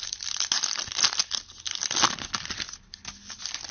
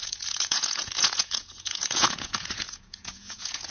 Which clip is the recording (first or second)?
first